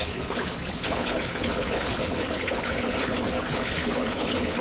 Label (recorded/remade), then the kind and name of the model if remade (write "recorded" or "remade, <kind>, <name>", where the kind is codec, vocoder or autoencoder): remade, codec, HILCodec